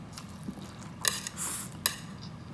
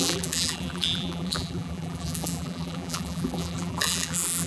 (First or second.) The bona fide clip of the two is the first